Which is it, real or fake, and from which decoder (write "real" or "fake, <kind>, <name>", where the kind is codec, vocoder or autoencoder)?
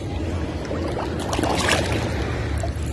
real